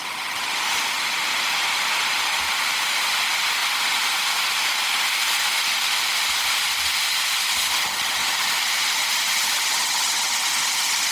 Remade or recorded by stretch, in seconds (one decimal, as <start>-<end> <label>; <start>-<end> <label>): 0.0-5.2 recorded; 5.2-6.7 remade; 6.7-8.2 recorded; 8.2-10.2 remade; 10.2-11.1 recorded